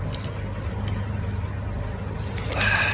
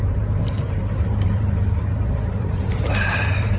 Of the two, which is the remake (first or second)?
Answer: second